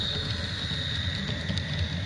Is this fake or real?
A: real